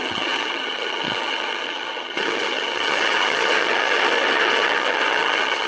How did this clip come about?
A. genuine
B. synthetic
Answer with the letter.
B